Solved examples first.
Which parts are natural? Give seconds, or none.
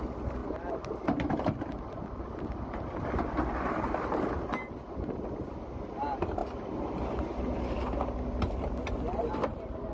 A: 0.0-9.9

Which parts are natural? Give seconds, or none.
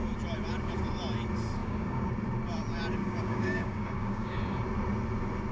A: 0.0-1.6; 2.1-3.0; 4.4-5.5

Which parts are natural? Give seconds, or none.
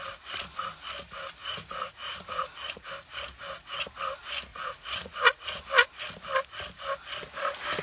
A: 0.0-1.4; 2.9-4.5; 5.6-7.8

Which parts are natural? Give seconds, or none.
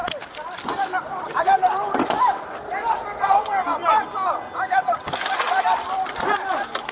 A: 0.0-6.9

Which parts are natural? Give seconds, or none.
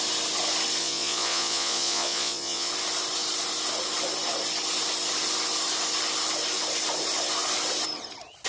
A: 0.0-0.8; 2.7-8.5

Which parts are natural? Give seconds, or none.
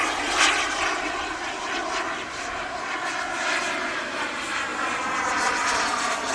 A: 0.0-6.3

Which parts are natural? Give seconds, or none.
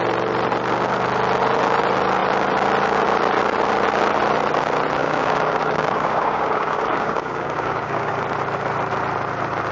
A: 0.0-5.0; 8.1-9.7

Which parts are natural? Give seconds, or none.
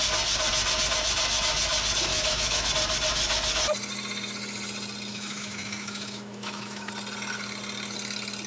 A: 0.0-2.1; 2.7-5.1; 6.9-8.5